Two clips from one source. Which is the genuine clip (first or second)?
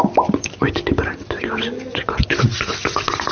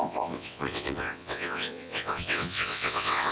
first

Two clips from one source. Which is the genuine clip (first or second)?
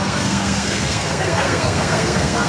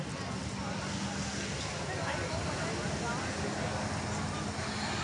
second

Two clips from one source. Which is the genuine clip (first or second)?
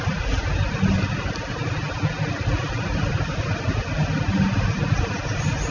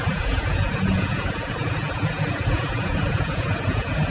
first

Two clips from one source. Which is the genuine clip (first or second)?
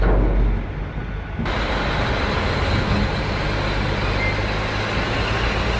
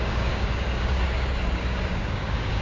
first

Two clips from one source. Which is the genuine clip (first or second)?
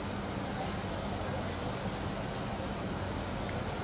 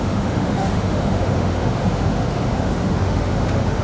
first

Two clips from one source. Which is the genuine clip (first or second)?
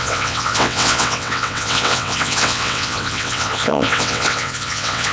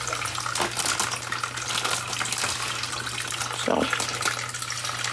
second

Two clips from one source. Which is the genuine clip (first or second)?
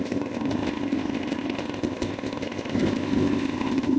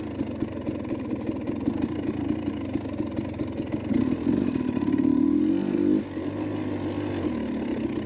second